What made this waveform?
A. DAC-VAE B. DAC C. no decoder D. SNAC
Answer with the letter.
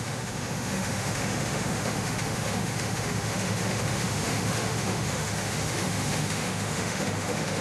A